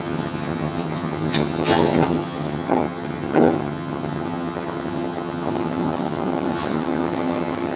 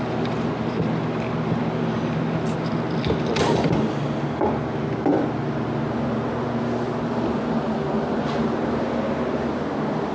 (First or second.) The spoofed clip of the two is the first